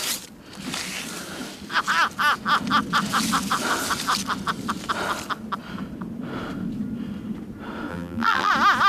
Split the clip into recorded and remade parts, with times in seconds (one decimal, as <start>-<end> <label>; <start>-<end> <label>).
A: 0.0-7.9 recorded; 7.9-8.5 remade; 8.5-8.9 recorded